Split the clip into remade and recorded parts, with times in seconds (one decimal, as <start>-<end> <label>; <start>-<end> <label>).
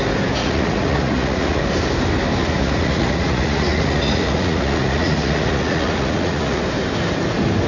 0.0-0.4 recorded; 0.4-1.6 remade; 1.6-2.4 recorded; 2.4-6.6 remade; 6.6-7.7 recorded